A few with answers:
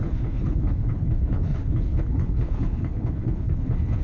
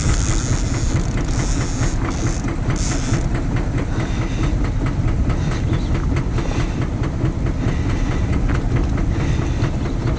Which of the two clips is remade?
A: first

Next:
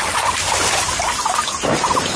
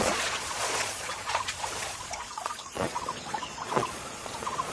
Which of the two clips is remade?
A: second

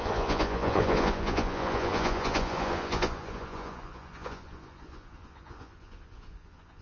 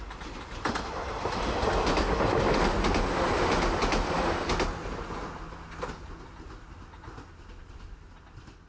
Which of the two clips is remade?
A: first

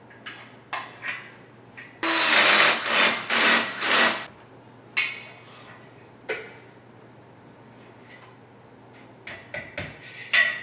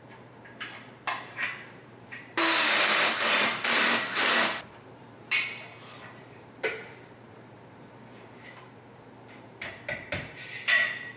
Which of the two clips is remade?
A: second